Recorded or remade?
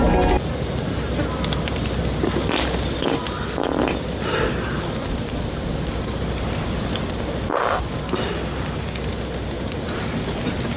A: recorded